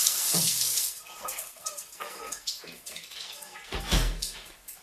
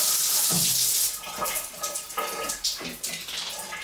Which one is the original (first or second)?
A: second